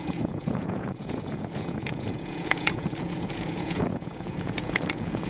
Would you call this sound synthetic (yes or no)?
yes